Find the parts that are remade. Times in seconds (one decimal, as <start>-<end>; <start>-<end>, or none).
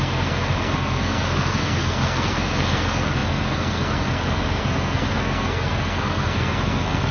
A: 0.0-7.1